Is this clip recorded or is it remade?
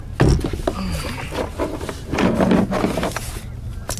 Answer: recorded